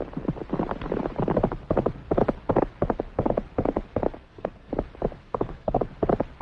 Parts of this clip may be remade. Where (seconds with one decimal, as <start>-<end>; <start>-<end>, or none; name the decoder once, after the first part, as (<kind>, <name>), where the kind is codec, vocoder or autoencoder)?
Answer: 4.2-4.7 (codec, SNAC); 5.2-5.8